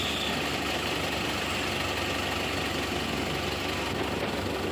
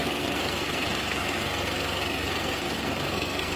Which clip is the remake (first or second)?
second